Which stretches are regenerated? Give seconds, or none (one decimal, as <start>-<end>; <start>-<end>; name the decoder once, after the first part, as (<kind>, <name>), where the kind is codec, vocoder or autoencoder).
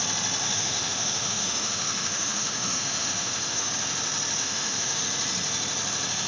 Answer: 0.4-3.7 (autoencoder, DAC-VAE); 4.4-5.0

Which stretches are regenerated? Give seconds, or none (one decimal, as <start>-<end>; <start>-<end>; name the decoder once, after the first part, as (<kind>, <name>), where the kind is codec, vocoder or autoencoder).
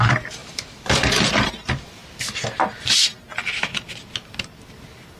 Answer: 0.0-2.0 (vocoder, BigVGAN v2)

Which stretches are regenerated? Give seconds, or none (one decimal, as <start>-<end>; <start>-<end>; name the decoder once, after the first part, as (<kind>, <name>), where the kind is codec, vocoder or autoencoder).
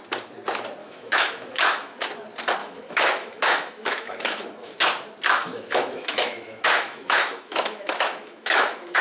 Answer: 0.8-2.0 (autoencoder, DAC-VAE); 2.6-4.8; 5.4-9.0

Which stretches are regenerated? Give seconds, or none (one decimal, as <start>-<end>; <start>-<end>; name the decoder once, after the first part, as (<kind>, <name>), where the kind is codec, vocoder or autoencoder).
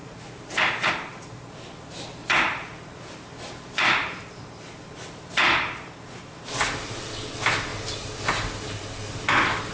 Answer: 0.0-0.9 (vocoder, BigVGAN v2); 2.2-6.4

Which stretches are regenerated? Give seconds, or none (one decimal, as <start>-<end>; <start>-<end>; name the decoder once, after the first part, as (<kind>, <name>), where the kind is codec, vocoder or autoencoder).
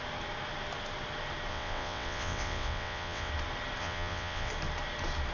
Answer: 1.5-3.3 (vocoder, WaveNeXt); 3.8-4.5